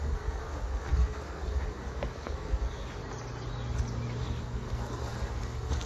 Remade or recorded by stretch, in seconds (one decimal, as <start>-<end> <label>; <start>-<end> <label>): 0.0-3.0 remade; 3.0-4.2 recorded; 4.2-5.9 remade